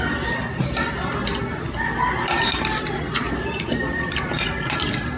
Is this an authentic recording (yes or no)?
yes